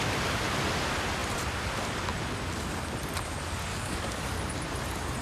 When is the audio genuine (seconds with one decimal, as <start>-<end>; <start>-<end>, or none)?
0.0-3.7; 4.4-5.2